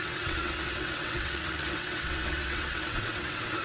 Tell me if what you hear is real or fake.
fake